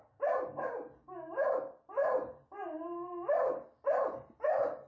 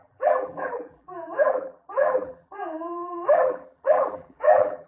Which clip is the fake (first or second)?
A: second